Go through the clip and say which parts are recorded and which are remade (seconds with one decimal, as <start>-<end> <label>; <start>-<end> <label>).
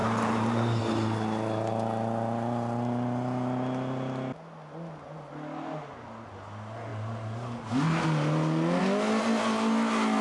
0.0-0.8 remade; 0.8-10.2 recorded